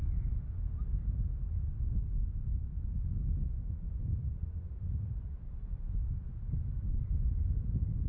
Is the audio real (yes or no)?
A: yes